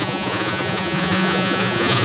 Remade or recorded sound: remade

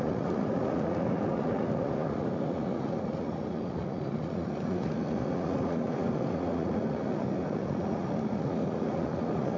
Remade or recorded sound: remade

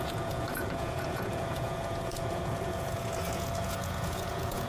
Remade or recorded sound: remade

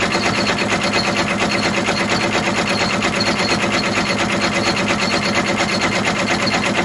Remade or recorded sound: recorded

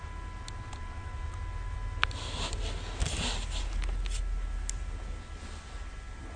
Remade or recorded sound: recorded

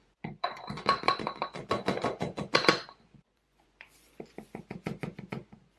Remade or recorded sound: remade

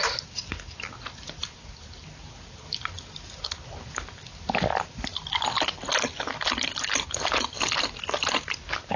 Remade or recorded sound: recorded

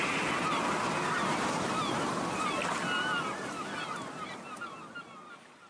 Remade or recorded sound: recorded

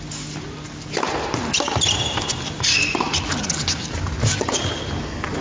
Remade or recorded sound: recorded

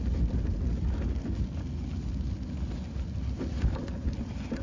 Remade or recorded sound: recorded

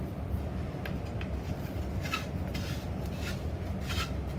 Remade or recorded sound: recorded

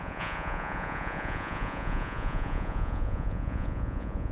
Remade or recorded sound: remade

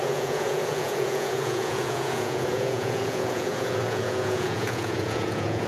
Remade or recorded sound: remade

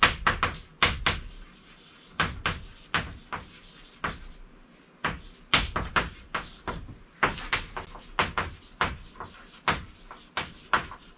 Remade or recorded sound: recorded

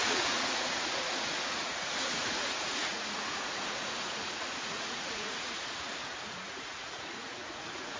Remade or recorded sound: remade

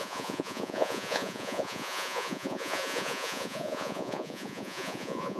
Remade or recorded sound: remade